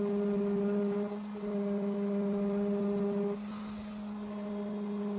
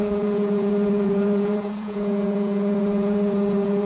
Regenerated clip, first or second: second